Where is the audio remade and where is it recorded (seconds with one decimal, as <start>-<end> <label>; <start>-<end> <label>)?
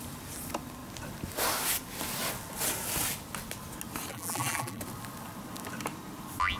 0.0-4.1 recorded; 4.1-4.8 remade; 4.8-6.6 recorded